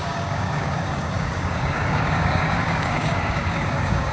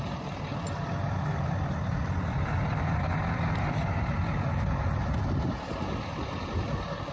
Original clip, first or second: second